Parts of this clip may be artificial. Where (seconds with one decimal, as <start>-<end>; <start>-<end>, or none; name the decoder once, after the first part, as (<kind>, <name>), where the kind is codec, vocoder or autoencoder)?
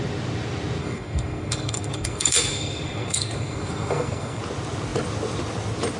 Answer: 0.8-4.4 (codec, SNAC)